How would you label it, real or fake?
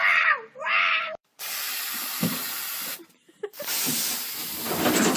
fake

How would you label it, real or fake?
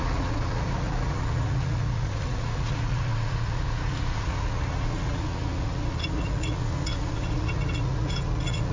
fake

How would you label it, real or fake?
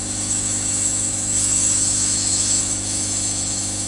fake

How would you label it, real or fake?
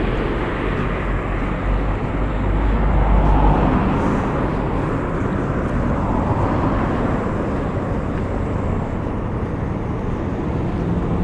real